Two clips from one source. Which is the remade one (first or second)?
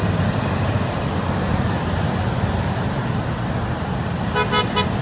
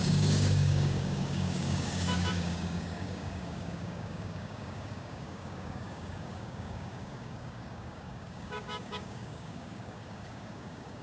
second